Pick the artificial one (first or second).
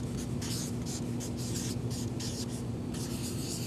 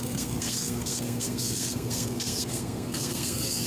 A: second